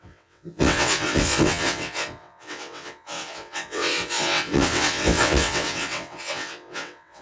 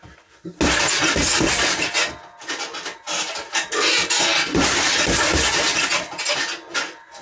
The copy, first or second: first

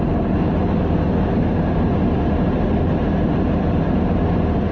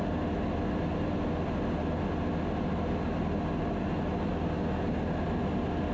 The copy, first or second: first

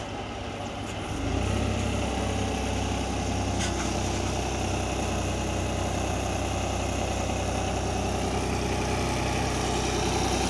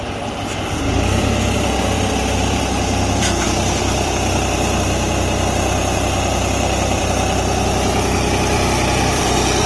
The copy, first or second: second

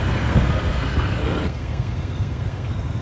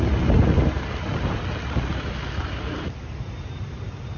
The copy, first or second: first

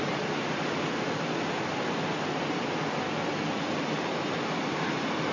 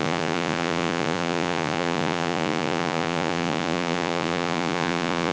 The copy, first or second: second